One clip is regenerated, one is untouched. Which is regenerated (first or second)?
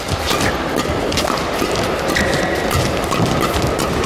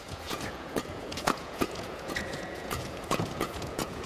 second